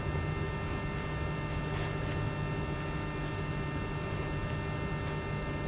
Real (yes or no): yes